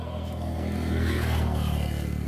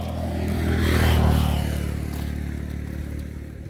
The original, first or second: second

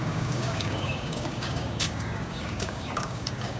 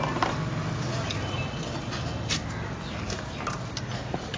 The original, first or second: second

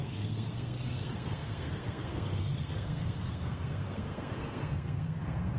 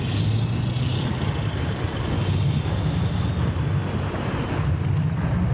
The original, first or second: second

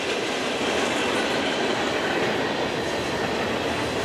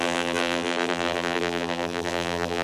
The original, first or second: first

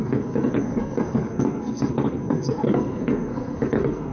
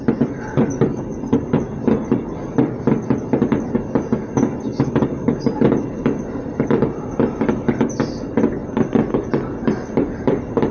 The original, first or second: second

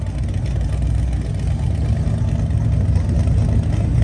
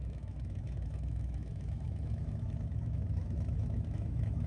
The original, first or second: first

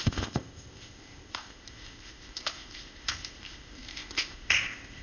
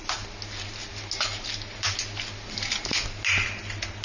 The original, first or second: second